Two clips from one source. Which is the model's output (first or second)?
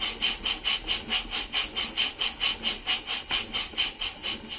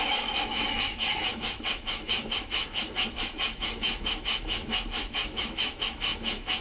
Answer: second